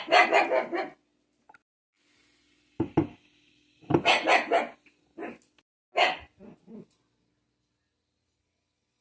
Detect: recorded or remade recorded